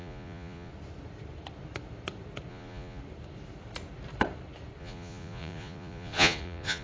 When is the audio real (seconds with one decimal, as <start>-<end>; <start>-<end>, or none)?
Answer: 0.7-2.5; 3.0-4.8